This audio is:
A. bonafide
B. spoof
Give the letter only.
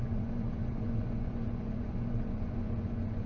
B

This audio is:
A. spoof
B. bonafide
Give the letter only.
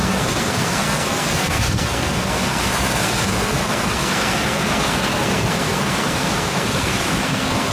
A